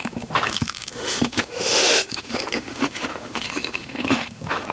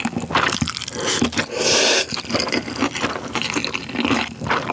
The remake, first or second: first